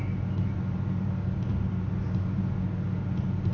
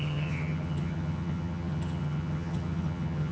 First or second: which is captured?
first